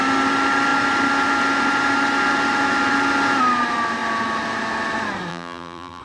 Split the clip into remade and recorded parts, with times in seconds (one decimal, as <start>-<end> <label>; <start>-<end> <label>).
0.0-5.3 recorded; 5.3-6.0 remade